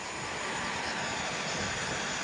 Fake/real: real